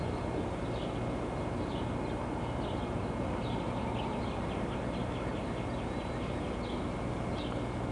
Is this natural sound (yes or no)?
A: yes